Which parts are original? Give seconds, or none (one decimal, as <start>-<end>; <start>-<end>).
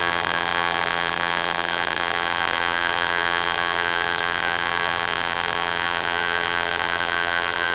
none